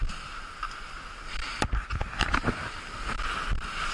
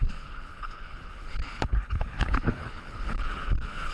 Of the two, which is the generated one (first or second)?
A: second